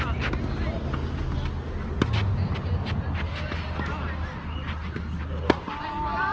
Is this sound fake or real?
real